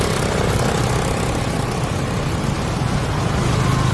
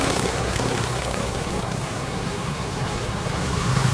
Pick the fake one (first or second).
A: second